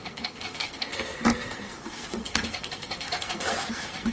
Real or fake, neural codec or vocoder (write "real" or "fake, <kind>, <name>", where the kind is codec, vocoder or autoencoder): fake, codec, SNAC